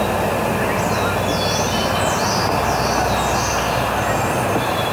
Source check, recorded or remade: recorded